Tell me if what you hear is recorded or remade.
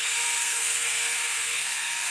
remade